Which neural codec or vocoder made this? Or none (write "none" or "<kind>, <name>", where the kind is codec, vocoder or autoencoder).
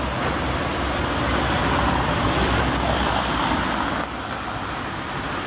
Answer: none